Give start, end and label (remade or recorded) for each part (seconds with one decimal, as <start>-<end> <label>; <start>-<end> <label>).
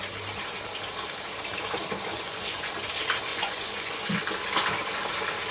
0.0-2.1 recorded; 2.1-2.7 remade; 2.7-3.3 recorded; 3.3-4.2 remade; 4.2-5.5 recorded